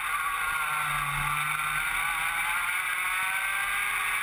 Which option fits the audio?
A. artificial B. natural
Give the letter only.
B